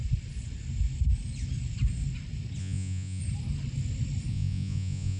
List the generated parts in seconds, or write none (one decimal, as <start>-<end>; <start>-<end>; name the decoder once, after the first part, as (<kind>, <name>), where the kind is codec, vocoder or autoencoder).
2.6-3.2 (vocoder, Vocos); 4.3-5.2